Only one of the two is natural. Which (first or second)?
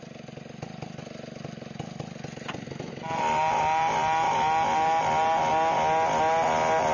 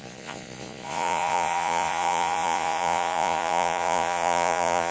first